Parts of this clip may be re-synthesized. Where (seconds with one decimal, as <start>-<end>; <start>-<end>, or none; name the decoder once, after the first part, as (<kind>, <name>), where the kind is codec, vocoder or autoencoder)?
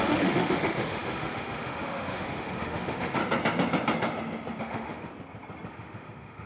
0.0-3.2 (autoencoder, DAC-VAE); 4.6-5.1; 5.7-6.5